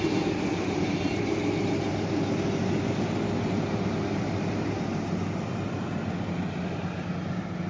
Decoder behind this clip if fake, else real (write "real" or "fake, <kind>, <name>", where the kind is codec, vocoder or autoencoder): real